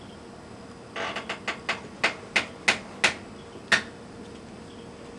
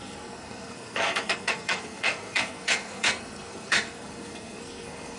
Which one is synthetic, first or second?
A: second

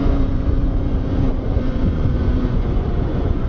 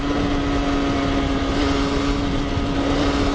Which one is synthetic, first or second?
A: first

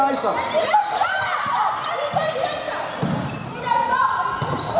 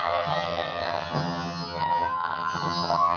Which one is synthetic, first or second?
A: second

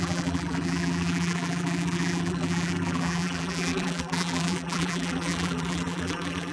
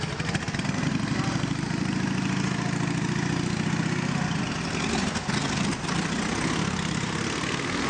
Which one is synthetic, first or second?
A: first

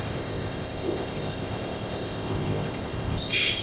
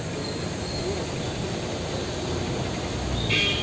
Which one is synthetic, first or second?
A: first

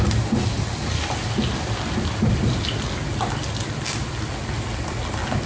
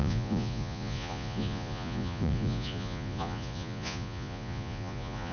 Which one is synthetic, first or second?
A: second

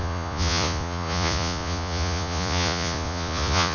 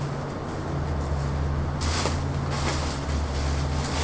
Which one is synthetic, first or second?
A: first